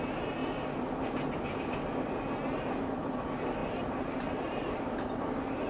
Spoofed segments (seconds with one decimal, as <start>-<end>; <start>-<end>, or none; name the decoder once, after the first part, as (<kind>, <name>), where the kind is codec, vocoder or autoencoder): 3.6-4.8 (vocoder, BigVGAN v2)